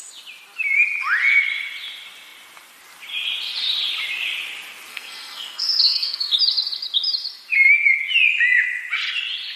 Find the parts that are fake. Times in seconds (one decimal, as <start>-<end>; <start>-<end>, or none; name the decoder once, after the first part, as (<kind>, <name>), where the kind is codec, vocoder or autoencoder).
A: 4.9-6.4 (codec, SNAC)